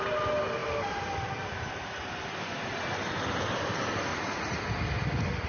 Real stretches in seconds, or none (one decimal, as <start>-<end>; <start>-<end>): 0.0-4.1; 4.6-5.5